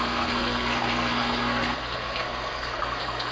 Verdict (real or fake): fake